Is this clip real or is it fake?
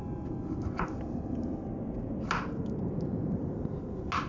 real